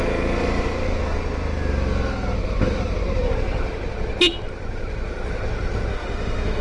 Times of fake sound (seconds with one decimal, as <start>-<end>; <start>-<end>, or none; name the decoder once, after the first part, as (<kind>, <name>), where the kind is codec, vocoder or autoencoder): 5.9-6.6 (autoencoder, DAC-VAE)